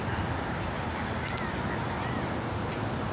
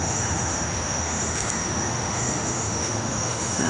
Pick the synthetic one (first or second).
second